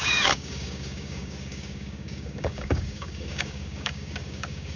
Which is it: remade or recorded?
remade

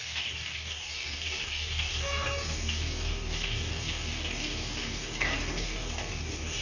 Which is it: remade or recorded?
remade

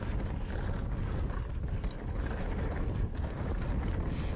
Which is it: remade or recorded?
recorded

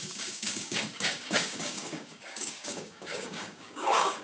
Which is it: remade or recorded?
remade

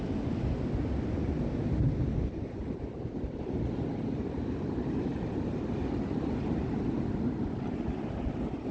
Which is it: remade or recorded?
recorded